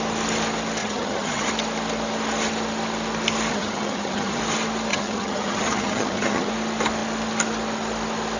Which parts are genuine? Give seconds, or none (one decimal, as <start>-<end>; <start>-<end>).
0.0-0.8; 1.5-3.5; 4.4-4.9; 6.5-8.4